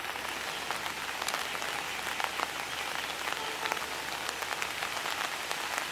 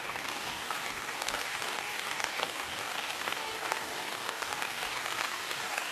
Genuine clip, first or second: first